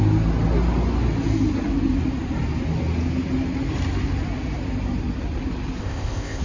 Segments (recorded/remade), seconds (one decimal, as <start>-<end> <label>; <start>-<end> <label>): 0.0-5.8 recorded; 5.8-6.4 remade